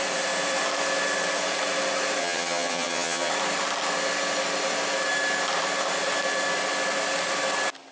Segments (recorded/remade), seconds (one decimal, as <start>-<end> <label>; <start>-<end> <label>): 0.0-2.2 recorded; 2.2-3.3 remade; 3.3-7.9 recorded